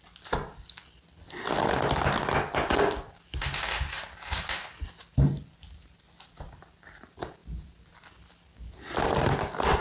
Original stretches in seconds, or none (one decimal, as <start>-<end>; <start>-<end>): 0.0-9.8